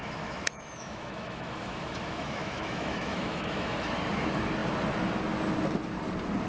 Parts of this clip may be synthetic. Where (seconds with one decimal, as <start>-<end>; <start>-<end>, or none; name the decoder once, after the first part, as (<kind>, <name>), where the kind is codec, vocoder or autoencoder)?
0.0-3.9 (autoencoder, DAC-VAE)